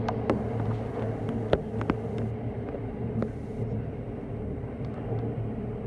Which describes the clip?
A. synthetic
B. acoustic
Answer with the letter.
B